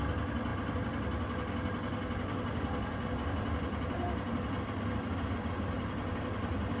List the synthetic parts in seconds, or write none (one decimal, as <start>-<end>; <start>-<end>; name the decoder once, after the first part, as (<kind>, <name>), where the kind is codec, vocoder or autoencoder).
none